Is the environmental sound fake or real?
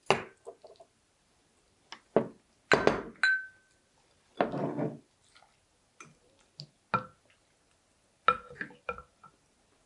real